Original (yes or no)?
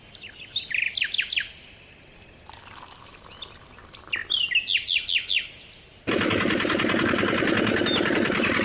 yes